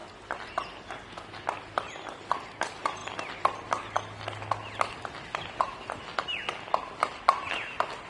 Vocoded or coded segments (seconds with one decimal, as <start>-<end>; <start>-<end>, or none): none